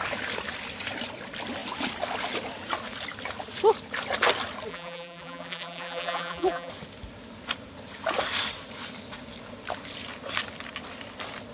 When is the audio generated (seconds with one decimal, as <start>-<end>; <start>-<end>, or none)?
4.7-6.7